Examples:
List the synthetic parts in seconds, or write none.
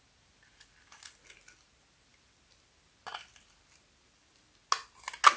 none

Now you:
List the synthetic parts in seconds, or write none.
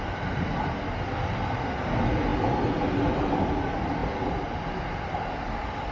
0.0-4.0; 5.0-5.9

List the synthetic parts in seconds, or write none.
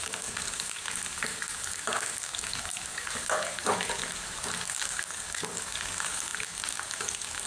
0.0-7.5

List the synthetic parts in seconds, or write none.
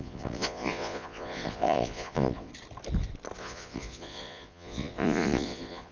0.0-2.5; 3.4-5.9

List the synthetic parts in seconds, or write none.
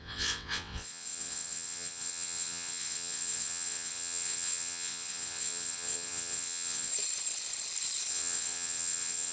0.0-6.9; 8.1-9.3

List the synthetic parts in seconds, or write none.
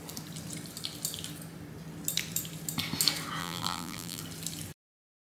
3.4-4.2